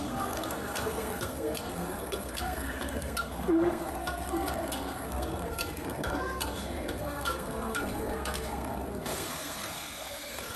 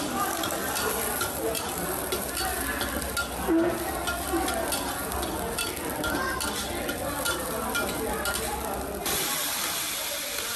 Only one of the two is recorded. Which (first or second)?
second